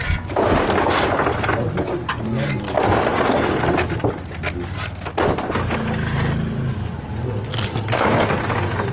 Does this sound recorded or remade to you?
recorded